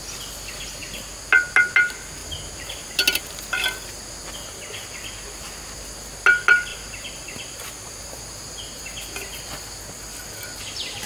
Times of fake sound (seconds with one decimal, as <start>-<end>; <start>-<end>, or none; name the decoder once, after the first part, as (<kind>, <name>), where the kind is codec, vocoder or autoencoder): 2.2-2.9 (vocoder, BigVGAN v2); 6.7-8.2